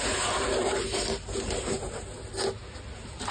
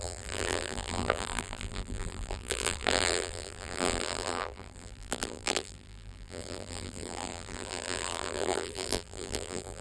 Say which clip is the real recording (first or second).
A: first